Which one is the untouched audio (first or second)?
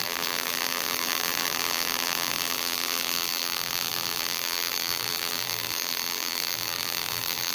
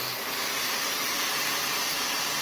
second